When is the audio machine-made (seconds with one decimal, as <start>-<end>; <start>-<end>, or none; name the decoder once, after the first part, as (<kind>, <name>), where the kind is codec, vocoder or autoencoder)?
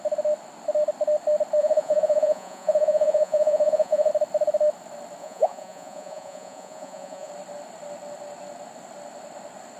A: 1.6-4.1 (vocoder, Vocos); 5.2-7.3